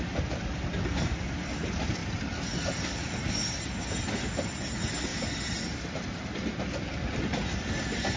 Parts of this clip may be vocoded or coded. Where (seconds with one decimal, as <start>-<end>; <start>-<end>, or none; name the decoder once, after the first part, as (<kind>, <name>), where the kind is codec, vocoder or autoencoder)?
none